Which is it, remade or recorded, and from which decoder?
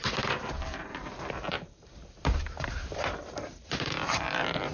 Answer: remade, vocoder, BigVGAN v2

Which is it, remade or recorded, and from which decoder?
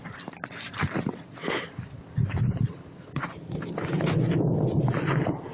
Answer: remade, vocoder, BigVGAN v2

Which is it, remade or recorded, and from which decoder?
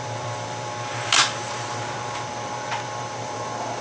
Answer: remade, vocoder, BigVGAN v2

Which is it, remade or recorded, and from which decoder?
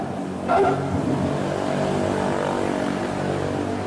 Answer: recorded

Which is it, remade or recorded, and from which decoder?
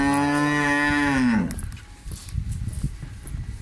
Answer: recorded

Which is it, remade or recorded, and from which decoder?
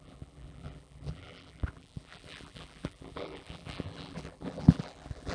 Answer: remade, vocoder, BigVGAN v2